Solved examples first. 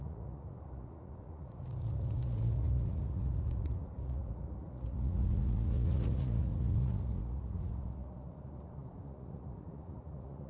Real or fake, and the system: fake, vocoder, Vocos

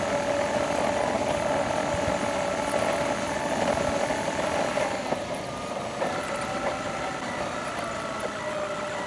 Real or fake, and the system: real